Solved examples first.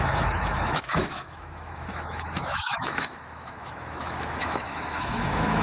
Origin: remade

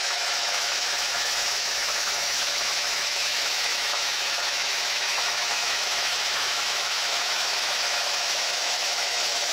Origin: remade